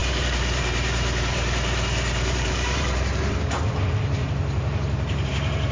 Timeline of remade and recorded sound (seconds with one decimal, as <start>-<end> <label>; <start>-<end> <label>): 0.0-5.7 remade